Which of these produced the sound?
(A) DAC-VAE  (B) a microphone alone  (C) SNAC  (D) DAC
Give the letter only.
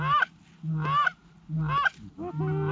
B